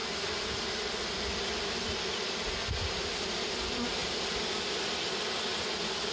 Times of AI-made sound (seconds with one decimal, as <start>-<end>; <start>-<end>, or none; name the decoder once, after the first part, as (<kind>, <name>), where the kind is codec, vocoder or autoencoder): 0.0-1.7 (vocoder, BigVGAN v2)